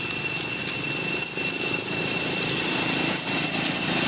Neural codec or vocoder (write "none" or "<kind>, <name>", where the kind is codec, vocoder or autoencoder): none